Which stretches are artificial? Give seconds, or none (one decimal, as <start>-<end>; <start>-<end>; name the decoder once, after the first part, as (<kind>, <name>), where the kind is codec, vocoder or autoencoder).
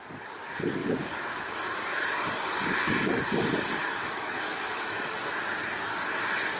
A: 3.8-5.2 (autoencoder, DAC-VAE)